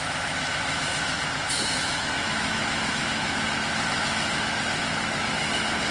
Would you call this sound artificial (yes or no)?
yes